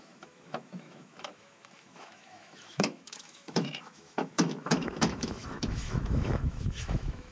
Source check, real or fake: fake